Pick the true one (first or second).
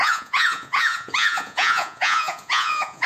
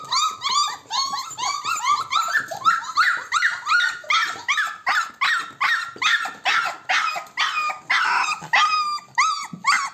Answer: second